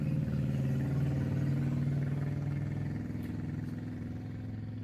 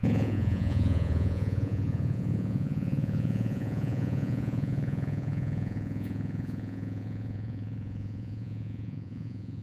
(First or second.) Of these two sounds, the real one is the first